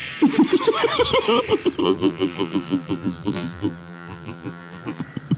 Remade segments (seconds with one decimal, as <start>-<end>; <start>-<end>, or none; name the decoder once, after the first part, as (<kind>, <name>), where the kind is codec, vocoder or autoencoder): 1.8-5.0 (vocoder, BigVGAN v2)